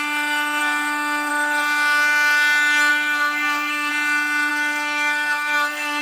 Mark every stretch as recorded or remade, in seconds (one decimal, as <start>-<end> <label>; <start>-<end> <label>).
0.0-0.6 recorded; 0.6-1.3 remade; 1.3-2.9 recorded; 2.9-3.9 remade; 3.9-4.5 recorded; 4.5-6.0 remade